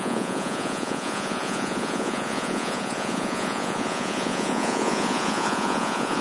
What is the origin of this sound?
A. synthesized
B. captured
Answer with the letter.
A